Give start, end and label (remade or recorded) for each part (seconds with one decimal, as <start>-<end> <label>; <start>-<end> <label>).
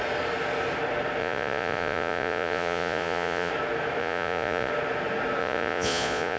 0.0-1.2 recorded; 1.2-3.5 remade; 3.5-4.0 recorded; 4.0-4.7 remade; 4.7-5.4 recorded; 5.4-6.4 remade